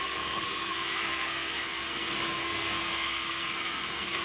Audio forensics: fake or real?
fake